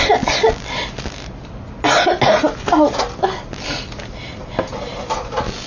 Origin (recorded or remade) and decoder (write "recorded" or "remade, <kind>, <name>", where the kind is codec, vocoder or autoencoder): recorded